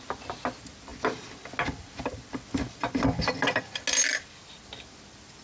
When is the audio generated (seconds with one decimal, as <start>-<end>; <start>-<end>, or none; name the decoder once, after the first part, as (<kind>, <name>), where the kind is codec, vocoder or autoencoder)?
none